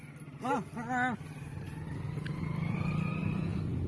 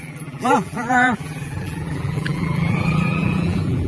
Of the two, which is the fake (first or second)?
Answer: second